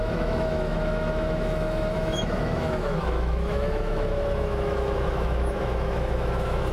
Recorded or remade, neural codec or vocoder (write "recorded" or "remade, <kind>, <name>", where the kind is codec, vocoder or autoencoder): remade, autoencoder, DAC-VAE